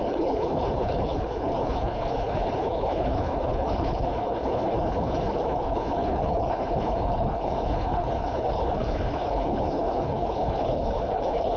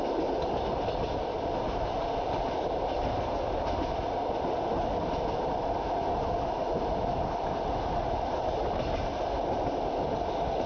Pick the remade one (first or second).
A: first